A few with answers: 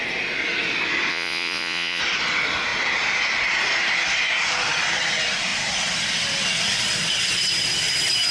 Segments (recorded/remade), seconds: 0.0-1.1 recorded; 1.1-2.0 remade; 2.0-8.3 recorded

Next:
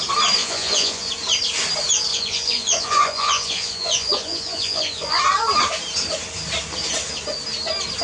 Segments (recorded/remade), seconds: 0.0-0.4 recorded; 0.4-1.1 remade; 1.1-2.1 recorded; 2.1-5.2 remade; 5.2-8.0 recorded

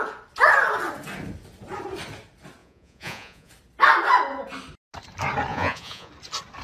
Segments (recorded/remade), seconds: 0.0-2.6 recorded; 2.6-3.5 remade; 3.5-5.5 recorded; 5.5-6.1 remade; 6.1-6.6 recorded

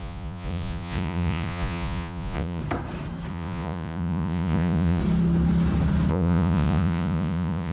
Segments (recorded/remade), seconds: 0.0-2.6 remade; 2.6-3.3 recorded; 3.3-5.0 remade; 5.0-6.1 recorded; 6.1-7.7 remade

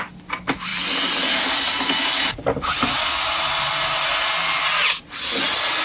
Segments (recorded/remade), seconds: 0.0-5.8 recorded

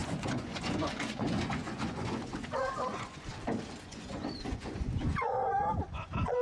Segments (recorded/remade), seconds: 0.0-3.3 remade; 3.3-3.8 recorded; 3.8-6.4 remade

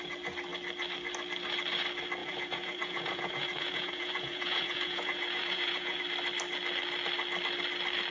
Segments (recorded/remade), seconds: 0.0-2.2 recorded; 2.2-6.0 remade; 6.0-8.1 recorded

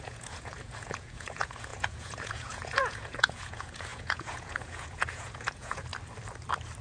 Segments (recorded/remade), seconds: 0.0-5.9 remade; 5.9-6.8 recorded